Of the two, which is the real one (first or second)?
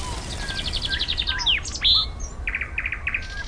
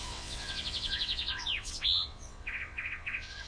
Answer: first